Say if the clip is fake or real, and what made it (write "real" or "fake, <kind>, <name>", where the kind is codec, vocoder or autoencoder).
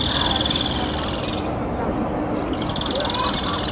real